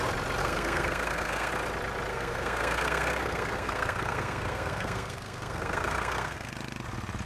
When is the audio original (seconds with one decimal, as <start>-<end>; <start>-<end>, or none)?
0.0-0.4; 1.5-2.1; 6.5-7.3